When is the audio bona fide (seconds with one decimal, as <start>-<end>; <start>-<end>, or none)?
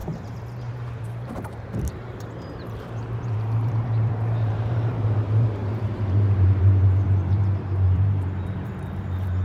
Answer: none